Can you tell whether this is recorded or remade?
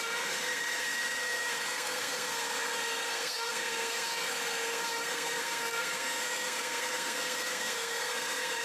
remade